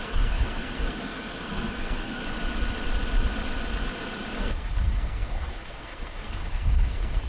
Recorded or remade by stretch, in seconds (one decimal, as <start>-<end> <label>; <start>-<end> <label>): 0.0-2.2 remade; 2.2-4.4 recorded; 4.4-7.3 remade

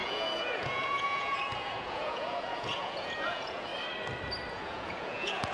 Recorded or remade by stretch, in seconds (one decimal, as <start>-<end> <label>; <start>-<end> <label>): 0.0-3.7 remade; 3.7-4.5 recorded; 4.5-5.5 remade

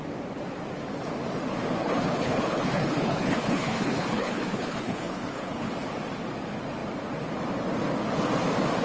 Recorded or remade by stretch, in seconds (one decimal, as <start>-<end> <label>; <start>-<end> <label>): 0.0-1.8 recorded; 1.8-5.7 remade; 5.7-8.8 recorded